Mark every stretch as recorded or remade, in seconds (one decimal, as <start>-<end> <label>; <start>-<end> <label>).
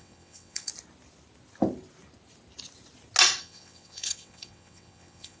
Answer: 0.0-0.7 remade; 0.7-3.4 recorded; 3.4-5.4 remade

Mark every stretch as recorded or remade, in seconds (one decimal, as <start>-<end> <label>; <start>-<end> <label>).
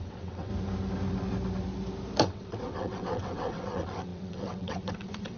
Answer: 0.0-0.5 remade; 0.5-2.2 recorded; 2.2-5.4 remade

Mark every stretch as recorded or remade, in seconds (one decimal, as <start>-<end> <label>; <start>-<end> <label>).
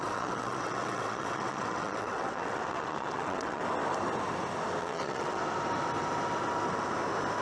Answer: 0.0-3.6 remade; 3.6-4.8 recorded; 4.8-5.4 remade; 5.4-7.4 recorded